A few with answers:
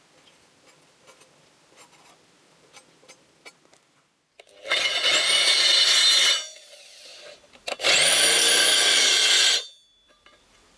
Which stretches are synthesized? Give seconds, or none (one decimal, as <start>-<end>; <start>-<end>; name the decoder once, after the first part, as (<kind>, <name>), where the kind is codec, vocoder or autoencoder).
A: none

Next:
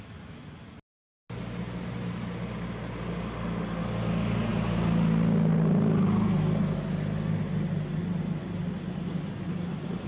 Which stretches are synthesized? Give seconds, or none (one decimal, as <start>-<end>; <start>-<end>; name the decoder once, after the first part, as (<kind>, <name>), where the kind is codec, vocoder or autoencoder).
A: none

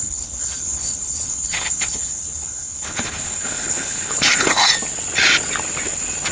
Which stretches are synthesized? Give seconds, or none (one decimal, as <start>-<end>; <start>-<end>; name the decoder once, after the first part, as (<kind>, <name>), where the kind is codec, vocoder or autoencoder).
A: 0.0-4.7 (codec, HILCodec)

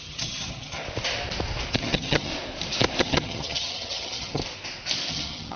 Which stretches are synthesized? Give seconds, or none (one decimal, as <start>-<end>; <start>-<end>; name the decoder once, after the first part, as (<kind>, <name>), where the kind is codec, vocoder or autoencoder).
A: 0.0-0.8 (vocoder, HiFi-GAN); 1.8-2.3; 3.0-4.4; 5.1-5.6